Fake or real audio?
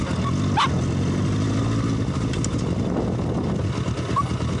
real